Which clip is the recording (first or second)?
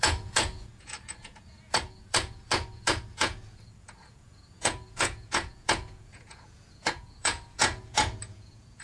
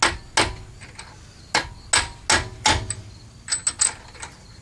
second